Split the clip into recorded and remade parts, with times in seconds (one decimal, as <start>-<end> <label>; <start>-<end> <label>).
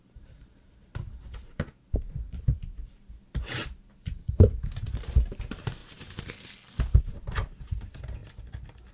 0.0-5.8 remade; 5.8-7.0 recorded; 7.0-8.2 remade; 8.2-8.9 recorded